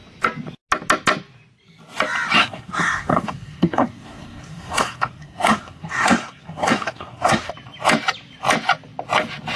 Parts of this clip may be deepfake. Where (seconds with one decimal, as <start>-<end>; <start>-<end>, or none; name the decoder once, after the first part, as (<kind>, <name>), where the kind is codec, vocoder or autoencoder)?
2.4-7.5 (codec, SNAC)